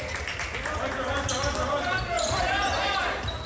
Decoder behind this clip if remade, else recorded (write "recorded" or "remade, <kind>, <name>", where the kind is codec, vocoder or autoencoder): recorded